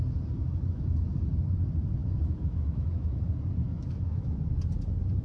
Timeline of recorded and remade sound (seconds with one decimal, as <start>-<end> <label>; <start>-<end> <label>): 0.0-0.4 recorded; 0.4-1.1 remade; 1.1-2.0 recorded; 2.0-3.2 remade; 3.2-3.7 recorded; 3.7-4.4 remade; 4.4-5.2 recorded